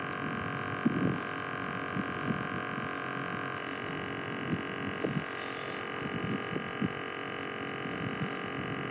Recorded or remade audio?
recorded